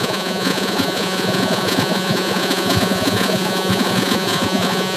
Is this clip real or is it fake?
fake